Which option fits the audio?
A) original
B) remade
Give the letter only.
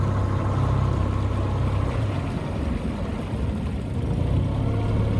A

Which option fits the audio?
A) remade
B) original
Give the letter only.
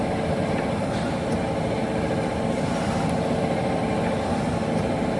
A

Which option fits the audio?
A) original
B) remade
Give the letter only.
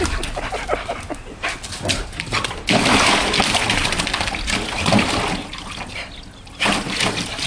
A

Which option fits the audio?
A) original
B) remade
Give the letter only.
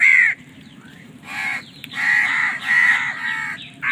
B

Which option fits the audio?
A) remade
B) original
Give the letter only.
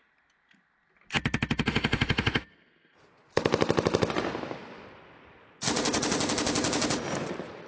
B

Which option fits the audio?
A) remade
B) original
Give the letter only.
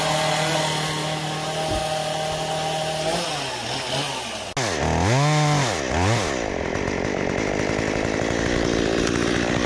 B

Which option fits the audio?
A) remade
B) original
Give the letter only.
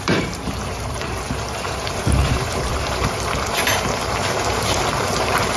A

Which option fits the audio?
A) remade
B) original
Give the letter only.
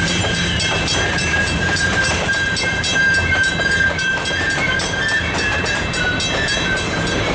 A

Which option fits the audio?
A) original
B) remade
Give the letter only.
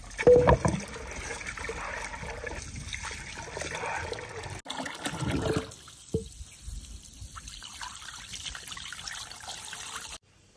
A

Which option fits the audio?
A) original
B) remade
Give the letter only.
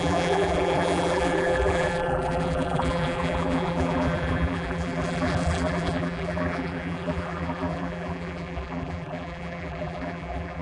B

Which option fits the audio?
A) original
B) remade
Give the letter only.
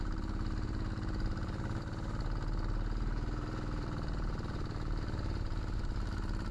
B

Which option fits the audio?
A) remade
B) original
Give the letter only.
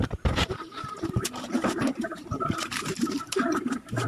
A